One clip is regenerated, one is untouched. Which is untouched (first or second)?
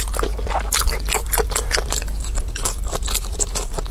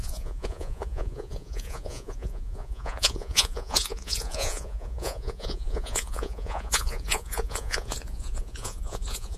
first